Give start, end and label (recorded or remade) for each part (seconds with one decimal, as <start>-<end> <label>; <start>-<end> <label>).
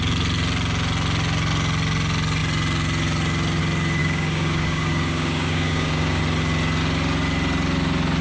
0.0-4.0 recorded; 4.0-6.2 remade; 6.2-8.2 recorded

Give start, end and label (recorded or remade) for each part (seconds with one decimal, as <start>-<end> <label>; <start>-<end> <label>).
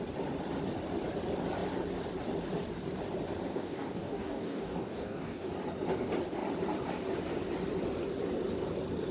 0.0-3.5 recorded; 3.5-5.5 remade; 5.5-9.1 recorded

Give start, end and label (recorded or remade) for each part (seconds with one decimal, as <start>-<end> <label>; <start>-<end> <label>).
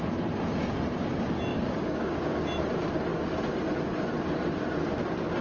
0.0-1.5 recorded; 1.5-2.4 remade; 2.4-5.4 recorded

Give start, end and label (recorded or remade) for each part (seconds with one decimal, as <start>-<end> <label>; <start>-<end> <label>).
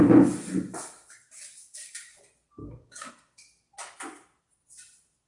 0.0-1.2 recorded; 1.2-2.2 remade; 2.2-2.6 recorded; 2.6-3.1 remade; 3.1-5.3 recorded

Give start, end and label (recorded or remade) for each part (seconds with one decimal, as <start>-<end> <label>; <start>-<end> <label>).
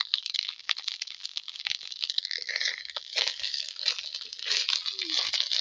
0.0-3.8 remade; 3.8-5.6 recorded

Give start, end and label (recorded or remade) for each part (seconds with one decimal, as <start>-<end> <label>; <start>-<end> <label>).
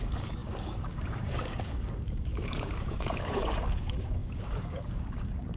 0.0-5.6 remade